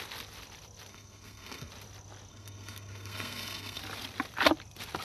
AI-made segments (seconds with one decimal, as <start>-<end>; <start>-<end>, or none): 0.9-1.7; 2.3-3.8